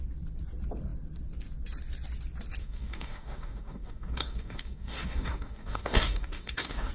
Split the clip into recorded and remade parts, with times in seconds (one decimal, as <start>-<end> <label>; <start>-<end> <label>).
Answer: 0.0-2.6 recorded; 2.6-6.9 remade